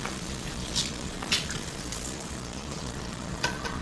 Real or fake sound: fake